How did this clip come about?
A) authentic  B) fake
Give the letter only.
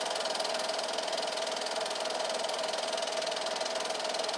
A